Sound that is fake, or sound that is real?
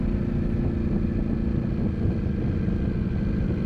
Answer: real